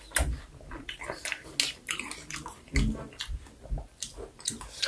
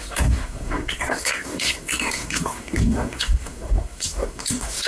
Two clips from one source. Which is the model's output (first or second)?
second